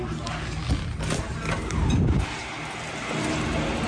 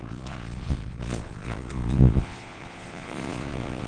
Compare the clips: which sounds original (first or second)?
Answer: first